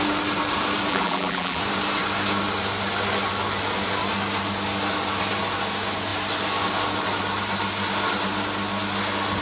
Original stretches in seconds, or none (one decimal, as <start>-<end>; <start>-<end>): 0.0-0.9; 1.6-9.4